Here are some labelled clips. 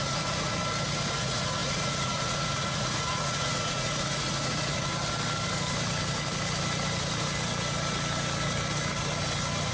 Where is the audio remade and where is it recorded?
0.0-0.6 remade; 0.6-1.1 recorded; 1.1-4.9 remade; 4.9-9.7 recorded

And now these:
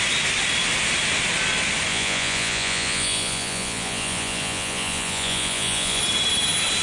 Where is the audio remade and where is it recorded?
0.0-1.9 recorded; 1.9-6.0 remade; 6.0-6.8 recorded

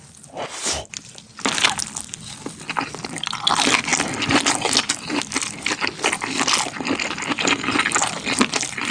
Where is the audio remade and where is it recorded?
0.0-8.9 recorded

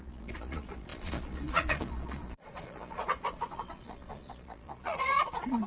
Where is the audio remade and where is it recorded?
0.0-5.7 remade

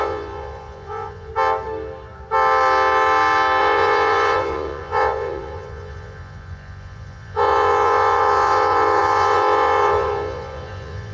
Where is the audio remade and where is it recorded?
0.0-1.3 remade; 1.3-3.6 recorded; 3.6-11.1 remade

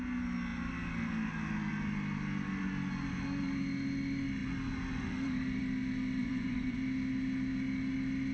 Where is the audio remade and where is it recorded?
0.0-6.2 recorded; 6.2-6.8 remade; 6.8-8.3 recorded

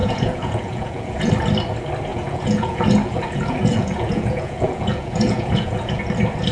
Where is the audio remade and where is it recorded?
0.0-1.3 remade; 1.3-2.1 recorded; 2.1-6.0 remade; 6.0-6.5 recorded

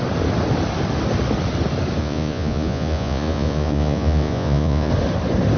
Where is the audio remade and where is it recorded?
0.0-2.0 recorded; 2.0-4.9 remade; 4.9-5.6 recorded